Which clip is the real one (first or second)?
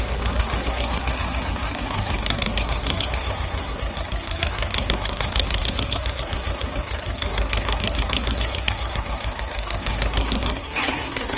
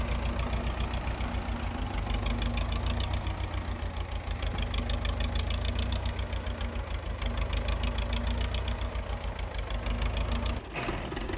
second